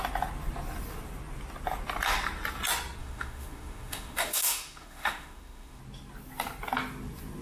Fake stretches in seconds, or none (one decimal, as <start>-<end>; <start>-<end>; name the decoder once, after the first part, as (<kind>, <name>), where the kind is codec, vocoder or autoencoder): 3.0-5.8 (autoencoder, DAC-VAE)